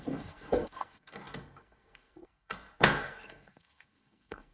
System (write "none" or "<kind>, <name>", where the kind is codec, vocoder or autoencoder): codec, SNAC